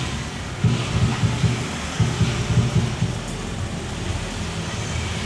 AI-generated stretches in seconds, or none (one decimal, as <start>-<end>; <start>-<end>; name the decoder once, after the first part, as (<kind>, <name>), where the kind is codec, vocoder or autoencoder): none